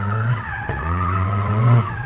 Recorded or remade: remade